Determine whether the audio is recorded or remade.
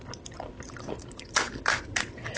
recorded